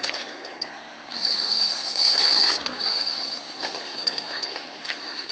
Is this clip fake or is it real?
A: fake